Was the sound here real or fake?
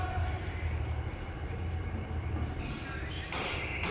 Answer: real